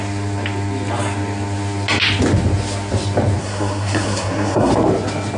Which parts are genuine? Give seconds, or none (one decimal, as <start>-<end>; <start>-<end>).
0.0-3.4; 4.7-5.4